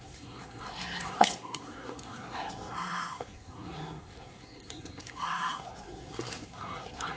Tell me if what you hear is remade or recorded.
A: remade